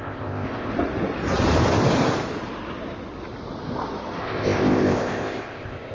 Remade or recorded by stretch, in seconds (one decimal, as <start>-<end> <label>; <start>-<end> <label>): 0.0-0.7 remade; 0.7-4.2 recorded; 4.2-5.9 remade